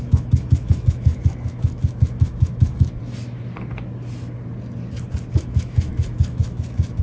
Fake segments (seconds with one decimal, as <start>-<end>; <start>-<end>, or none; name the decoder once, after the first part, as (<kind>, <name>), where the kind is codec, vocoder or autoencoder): 0.0-3.0 (autoencoder, DAC-VAE); 5.3-7.0